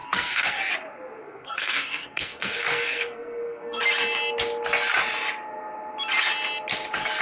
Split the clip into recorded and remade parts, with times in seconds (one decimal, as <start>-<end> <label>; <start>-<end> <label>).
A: 0.0-0.7 remade; 0.7-1.2 recorded; 1.2-3.8 remade; 3.8-7.2 recorded